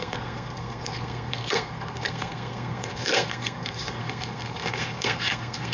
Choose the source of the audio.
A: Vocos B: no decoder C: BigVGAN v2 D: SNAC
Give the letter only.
D